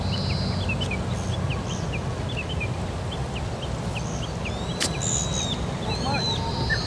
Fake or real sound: real